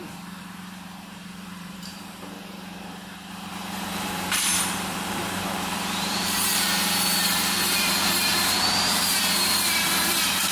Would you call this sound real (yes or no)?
no